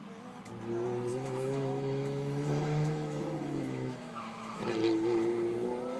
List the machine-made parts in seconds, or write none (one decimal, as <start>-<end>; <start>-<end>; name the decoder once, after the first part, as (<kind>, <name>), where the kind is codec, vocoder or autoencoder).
1.1-4.7 (autoencoder, DAC-VAE)